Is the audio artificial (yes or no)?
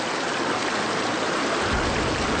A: no